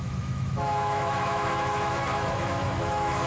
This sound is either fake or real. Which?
fake